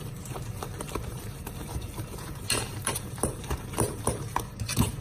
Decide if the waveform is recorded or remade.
remade